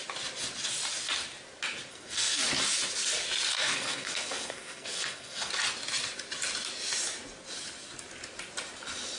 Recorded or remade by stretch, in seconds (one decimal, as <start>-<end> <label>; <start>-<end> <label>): 0.0-1.9 recorded; 1.9-2.4 remade; 2.4-3.5 recorded; 3.5-5.5 remade; 5.5-9.2 recorded